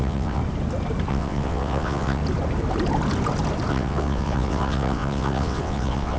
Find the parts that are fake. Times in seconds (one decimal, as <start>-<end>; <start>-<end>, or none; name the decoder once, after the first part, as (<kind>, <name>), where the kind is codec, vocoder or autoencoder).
0.0-0.4 (vocoder, WaveNeXt); 1.1-2.2; 3.7-6.2